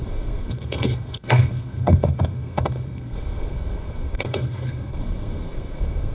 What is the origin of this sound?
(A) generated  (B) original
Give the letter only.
A